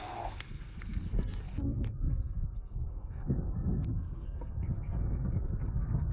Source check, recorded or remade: remade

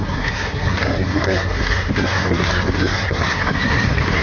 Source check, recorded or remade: remade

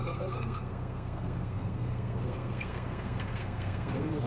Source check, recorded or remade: remade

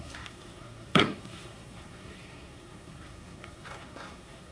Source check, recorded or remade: remade